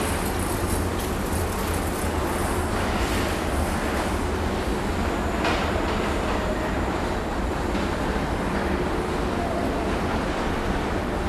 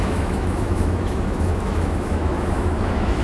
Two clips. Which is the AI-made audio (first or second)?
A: second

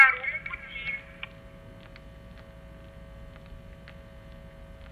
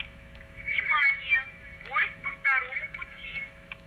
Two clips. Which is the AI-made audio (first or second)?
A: second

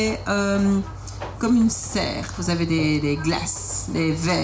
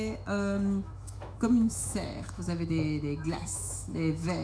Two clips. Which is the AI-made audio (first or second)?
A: second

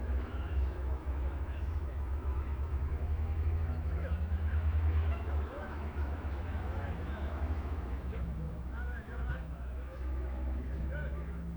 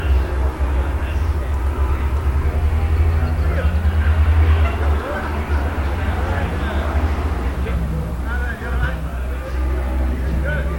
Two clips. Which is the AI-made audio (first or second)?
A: first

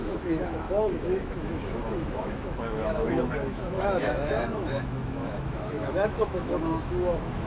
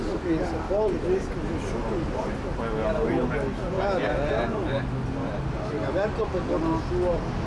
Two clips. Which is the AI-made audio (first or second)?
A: first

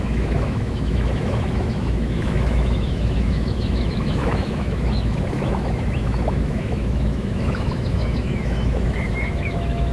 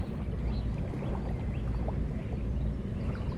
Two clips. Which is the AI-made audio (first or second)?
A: first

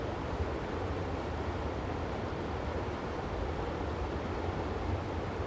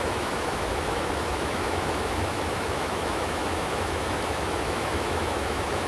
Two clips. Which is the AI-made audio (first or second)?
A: second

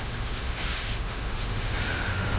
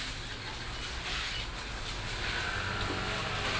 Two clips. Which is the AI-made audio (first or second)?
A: first